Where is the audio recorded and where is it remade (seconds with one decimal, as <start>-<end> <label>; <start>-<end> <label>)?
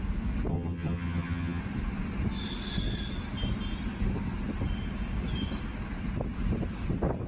0.0-0.5 recorded; 0.5-1.6 remade; 1.6-7.3 recorded